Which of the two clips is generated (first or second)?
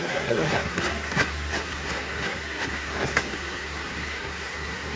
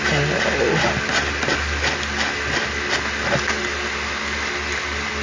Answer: first